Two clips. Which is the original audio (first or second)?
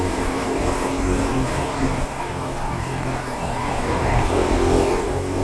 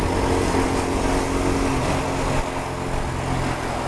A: second